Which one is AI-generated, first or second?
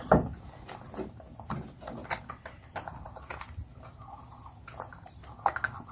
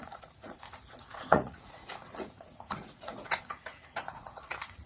second